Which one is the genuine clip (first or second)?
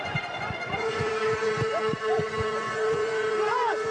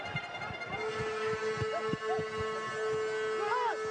second